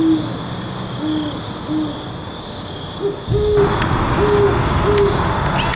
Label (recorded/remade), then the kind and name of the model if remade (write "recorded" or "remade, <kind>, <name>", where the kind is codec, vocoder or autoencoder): recorded